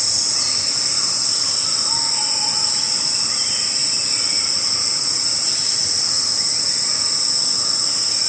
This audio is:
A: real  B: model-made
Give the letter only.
A